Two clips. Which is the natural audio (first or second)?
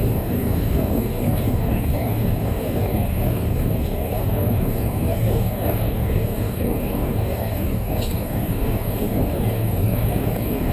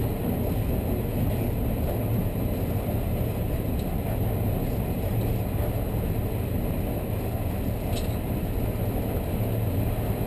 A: second